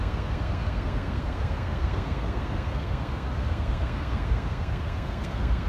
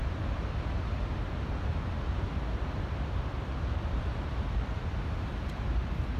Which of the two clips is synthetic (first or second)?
first